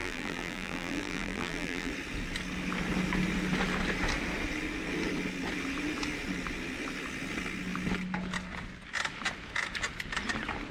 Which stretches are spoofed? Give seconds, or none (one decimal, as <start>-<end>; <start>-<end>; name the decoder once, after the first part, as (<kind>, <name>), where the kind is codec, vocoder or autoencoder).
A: 0.0-1.9 (vocoder, BigVGAN v2)